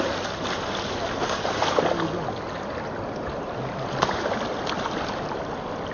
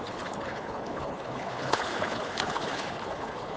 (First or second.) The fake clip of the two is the second